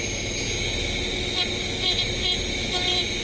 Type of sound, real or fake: real